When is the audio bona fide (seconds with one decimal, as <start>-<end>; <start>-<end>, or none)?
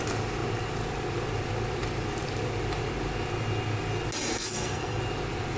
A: 0.0-4.3; 5.0-5.6